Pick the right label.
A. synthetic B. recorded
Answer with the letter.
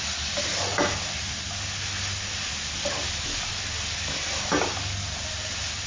B